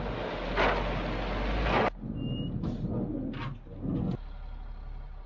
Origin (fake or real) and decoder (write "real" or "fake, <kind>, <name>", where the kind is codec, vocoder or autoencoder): real